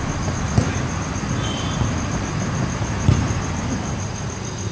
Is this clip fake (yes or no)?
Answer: no